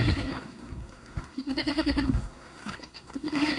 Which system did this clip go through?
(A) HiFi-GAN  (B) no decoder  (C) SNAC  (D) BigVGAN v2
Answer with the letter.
C